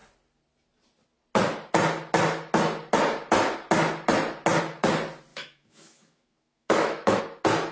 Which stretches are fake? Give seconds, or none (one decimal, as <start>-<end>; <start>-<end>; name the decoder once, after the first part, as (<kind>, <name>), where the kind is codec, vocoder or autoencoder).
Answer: 5.3-7.2 (autoencoder, DAC-VAE)